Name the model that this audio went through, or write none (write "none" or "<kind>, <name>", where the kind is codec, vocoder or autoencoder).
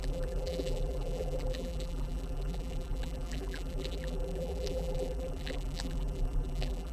vocoder, BigVGAN v2